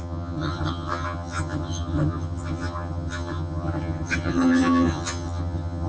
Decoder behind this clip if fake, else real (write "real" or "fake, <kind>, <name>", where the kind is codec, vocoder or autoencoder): fake, vocoder, HiFi-GAN